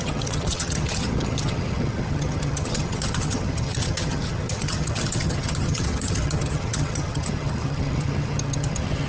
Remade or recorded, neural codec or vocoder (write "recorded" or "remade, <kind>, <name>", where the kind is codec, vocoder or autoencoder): remade, vocoder, HiFi-GAN